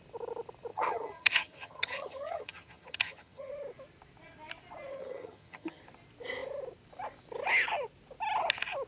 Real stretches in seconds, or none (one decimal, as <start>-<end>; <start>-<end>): 0.0-0.7; 3.5-4.9; 5.8-8.9